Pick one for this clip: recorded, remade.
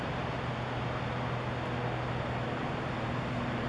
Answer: recorded